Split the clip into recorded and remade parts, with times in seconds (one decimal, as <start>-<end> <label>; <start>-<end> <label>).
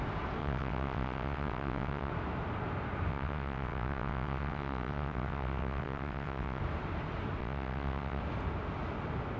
0.0-0.4 recorded; 0.4-2.1 remade; 2.1-3.1 recorded; 3.1-6.6 remade; 6.6-7.4 recorded; 7.4-8.2 remade; 8.2-9.4 recorded